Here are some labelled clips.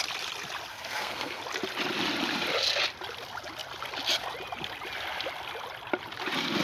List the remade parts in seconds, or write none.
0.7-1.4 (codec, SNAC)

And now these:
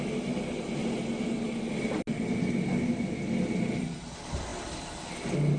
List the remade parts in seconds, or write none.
none

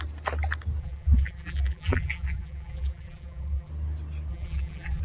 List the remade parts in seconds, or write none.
0.8-3.7 (vocoder, BigVGAN v2); 4.3-5.0

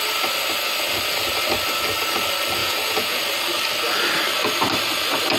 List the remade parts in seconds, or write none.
2.6-3.2 (vocoder, Vocos)

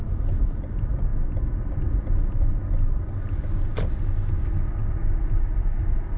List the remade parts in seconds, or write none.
none

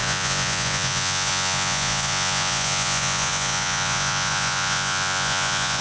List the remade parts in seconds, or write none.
0.0-5.8 (vocoder, Vocos)

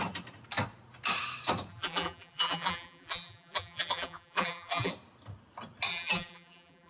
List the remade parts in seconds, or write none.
1.7-4.9 (vocoder, BigVGAN v2); 5.9-6.9